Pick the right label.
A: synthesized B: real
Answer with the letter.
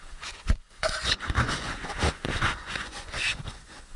A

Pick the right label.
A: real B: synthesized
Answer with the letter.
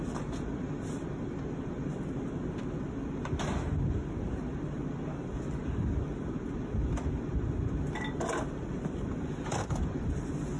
A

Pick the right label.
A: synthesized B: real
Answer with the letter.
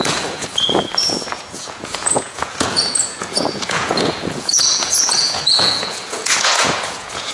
A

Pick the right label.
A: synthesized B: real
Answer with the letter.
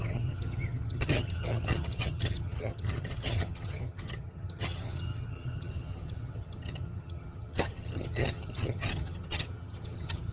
A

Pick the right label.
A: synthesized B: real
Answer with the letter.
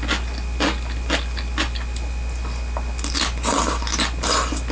B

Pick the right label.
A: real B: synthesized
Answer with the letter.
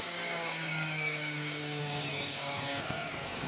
B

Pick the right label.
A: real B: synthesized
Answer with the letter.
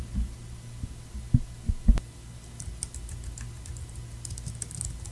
A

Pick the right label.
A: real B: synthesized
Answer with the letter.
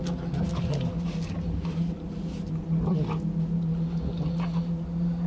A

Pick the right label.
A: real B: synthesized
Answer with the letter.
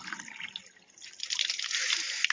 A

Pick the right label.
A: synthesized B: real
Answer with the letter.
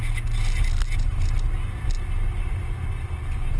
B